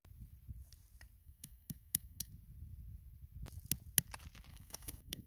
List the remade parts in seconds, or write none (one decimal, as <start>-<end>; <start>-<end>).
1.2-2.3; 4.5-5.3